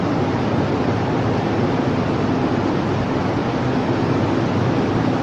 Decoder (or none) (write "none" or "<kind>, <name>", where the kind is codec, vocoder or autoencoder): none